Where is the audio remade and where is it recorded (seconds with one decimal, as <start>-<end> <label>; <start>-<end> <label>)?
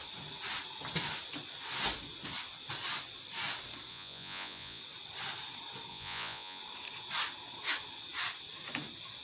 0.0-3.9 recorded; 3.9-4.8 remade; 4.8-5.9 recorded; 5.9-6.6 remade; 6.6-9.2 recorded